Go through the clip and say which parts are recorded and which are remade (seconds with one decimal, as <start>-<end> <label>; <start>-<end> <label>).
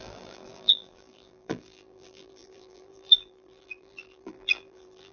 0.0-5.1 remade